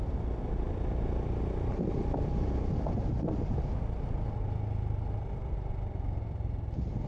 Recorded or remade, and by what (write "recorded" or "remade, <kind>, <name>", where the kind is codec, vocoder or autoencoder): recorded